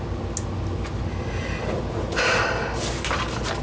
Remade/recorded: recorded